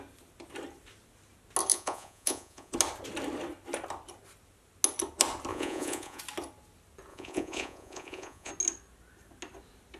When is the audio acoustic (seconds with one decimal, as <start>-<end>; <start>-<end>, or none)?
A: 0.0-1.7; 2.7-5.5; 6.2-7.1; 8.5-10.0